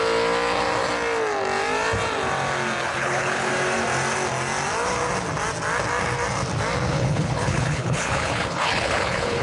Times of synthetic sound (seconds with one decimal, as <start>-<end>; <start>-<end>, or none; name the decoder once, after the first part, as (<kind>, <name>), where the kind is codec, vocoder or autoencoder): 2.8-3.5 (codec, HILCodec); 6.9-9.4